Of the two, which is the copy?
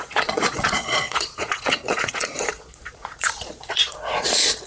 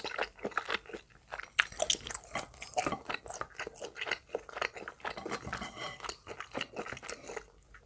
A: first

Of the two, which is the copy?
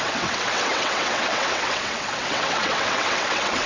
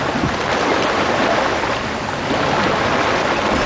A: first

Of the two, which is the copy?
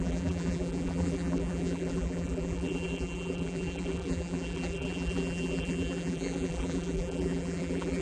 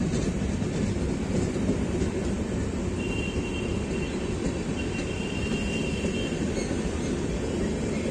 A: first